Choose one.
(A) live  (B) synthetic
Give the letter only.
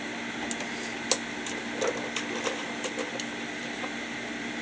A